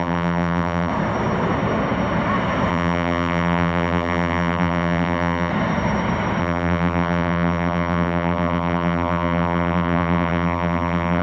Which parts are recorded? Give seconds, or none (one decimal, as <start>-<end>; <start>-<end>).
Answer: 0.9-2.7; 5.5-6.4